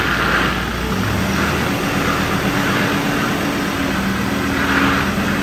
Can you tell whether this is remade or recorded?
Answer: recorded